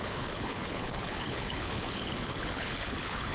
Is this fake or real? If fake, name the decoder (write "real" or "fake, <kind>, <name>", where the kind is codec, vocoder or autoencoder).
fake, codec, HILCodec